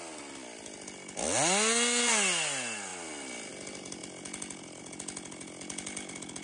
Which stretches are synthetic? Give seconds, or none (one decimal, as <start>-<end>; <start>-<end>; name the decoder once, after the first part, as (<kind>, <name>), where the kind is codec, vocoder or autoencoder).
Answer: none